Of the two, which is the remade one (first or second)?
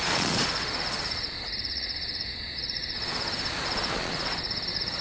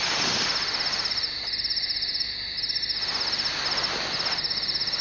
first